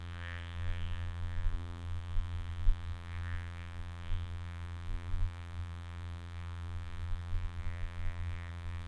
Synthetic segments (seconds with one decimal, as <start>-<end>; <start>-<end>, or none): 0.0-8.9